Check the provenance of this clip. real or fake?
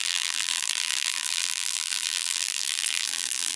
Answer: fake